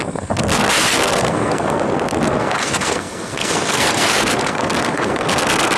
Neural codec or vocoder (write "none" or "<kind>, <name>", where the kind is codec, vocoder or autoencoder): codec, SNAC